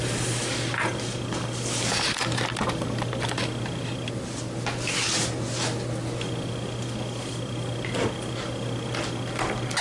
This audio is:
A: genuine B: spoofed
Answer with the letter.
A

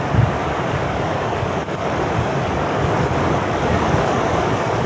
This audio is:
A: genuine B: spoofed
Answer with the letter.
B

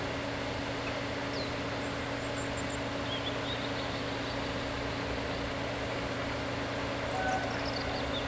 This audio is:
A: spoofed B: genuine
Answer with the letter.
B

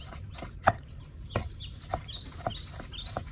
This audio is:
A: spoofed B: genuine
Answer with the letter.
B